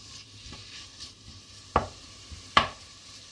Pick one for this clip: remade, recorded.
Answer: remade